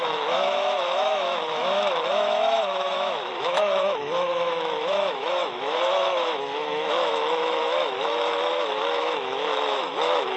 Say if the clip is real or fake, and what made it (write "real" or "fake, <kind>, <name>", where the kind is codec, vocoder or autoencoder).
fake, autoencoder, DAC-VAE